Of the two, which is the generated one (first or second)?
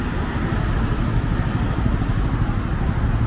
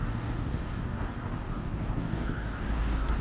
second